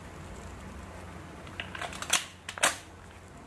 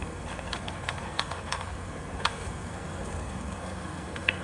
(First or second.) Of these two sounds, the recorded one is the first